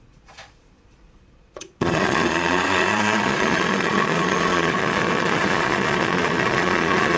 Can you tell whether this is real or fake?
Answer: fake